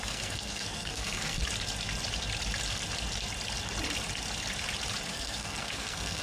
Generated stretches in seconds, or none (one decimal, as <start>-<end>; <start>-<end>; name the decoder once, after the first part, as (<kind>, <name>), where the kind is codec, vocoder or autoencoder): 0.0-1.4 (codec, SNAC); 5.1-6.2